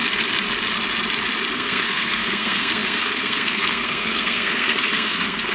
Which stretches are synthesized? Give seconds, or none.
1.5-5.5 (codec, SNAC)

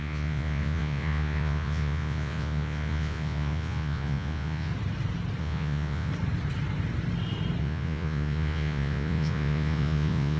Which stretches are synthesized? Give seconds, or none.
0.0-4.7 (vocoder, Vocos); 5.4-6.1; 7.6-10.4

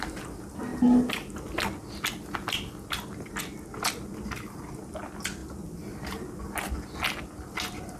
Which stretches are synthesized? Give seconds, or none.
none

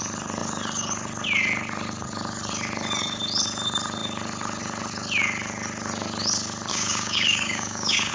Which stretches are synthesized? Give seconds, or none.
6.7-8.1 (codec, DAC)

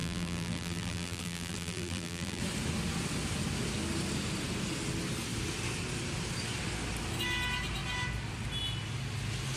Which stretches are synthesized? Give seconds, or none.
0.0-2.4 (vocoder, BigVGAN v2)

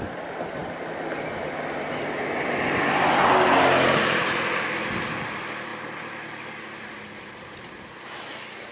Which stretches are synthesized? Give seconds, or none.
none

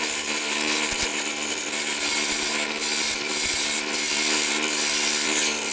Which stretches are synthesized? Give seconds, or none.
none

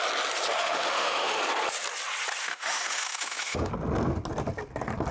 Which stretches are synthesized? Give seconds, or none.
0.6-1.4 (autoencoder, DAC-VAE); 2.4-3.7